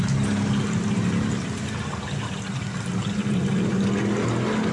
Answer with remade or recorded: recorded